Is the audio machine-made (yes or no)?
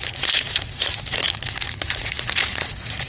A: yes